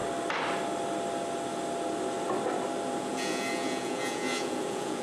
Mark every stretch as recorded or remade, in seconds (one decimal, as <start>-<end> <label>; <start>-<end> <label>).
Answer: 0.0-3.0 recorded; 3.0-5.0 remade